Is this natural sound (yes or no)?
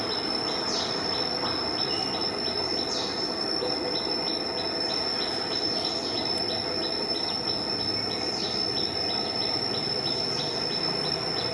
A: yes